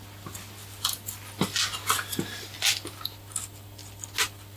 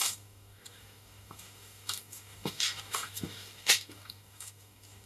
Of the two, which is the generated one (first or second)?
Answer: second